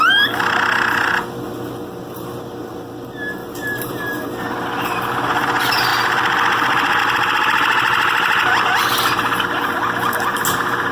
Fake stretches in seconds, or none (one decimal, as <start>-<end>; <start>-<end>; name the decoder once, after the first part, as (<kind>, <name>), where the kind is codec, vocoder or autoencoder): 3.4-3.9 (vocoder, BigVGAN v2)